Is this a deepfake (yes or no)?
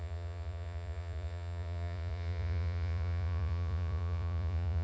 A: yes